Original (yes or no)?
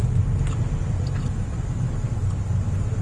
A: yes